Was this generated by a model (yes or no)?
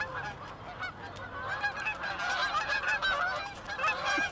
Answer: no